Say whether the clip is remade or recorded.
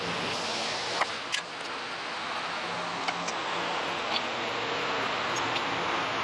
recorded